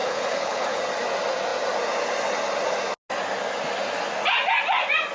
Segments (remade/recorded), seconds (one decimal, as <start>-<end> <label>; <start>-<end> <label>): 0.0-0.8 remade; 0.8-5.1 recorded